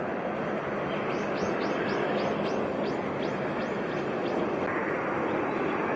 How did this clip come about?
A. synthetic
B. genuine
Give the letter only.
B